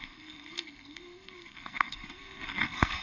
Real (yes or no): no